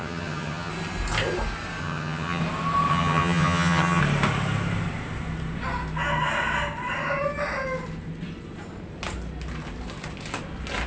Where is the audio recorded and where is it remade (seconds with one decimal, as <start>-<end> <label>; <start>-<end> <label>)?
0.0-0.7 remade; 0.7-1.8 recorded; 1.8-2.4 remade; 2.4-2.9 recorded; 2.9-4.0 remade; 4.0-10.9 recorded

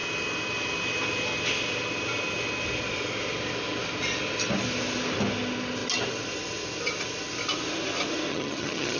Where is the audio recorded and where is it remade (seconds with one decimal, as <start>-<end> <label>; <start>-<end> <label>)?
0.0-8.3 recorded; 8.3-9.0 remade

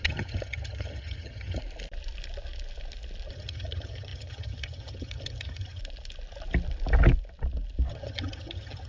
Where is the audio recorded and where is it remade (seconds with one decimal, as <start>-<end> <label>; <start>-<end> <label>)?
0.0-1.6 remade; 1.6-3.3 recorded; 3.3-5.8 remade; 5.8-7.9 recorded; 7.9-8.9 remade

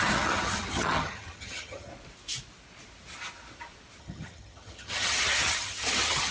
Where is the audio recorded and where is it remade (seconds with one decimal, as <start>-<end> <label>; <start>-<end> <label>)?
0.0-1.9 remade; 1.9-4.0 recorded; 4.0-6.3 remade

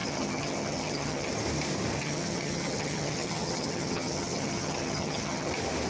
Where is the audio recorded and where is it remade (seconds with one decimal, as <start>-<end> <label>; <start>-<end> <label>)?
0.0-1.3 remade; 1.3-2.0 recorded; 2.0-5.5 remade; 5.5-5.9 recorded